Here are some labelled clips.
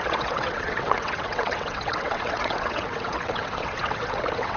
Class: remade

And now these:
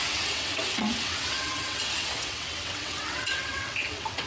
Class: remade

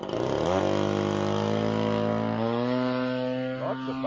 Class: recorded